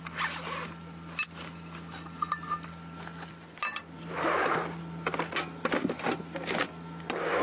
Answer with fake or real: real